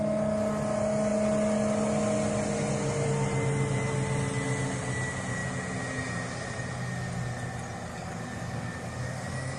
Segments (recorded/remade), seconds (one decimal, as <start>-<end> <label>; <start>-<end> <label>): 0.0-7.9 recorded; 7.9-9.6 remade